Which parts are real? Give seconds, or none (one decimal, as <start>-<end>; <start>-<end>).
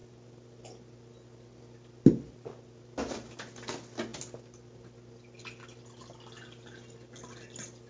0.0-7.9